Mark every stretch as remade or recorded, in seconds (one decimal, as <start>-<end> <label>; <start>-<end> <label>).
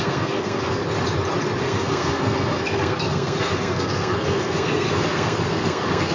0.0-0.8 remade; 0.8-1.6 recorded; 1.6-6.1 remade